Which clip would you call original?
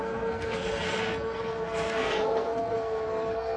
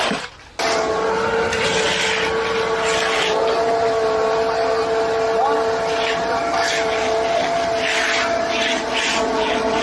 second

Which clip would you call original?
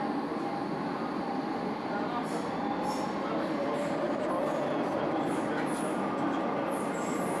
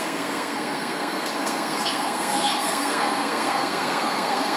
first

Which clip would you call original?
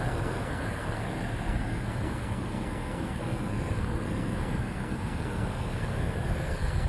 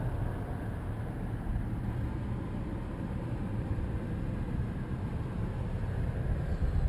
second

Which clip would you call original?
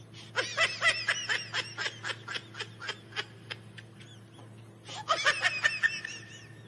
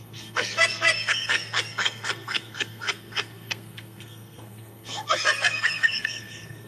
first